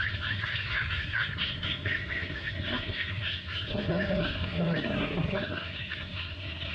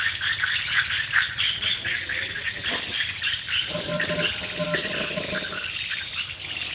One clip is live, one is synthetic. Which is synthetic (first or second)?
first